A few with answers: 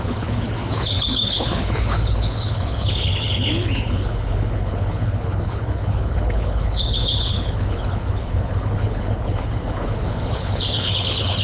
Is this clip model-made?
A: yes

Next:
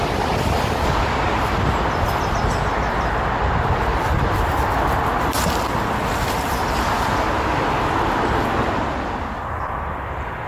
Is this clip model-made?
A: no